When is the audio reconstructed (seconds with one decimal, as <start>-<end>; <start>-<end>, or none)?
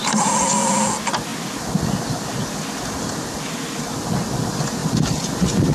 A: none